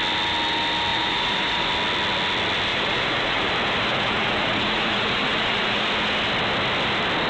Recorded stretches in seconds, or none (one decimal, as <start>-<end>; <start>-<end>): 0.0-0.9; 1.7-2.7; 3.5-3.9; 5.9-7.3